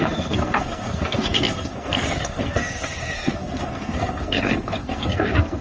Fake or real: fake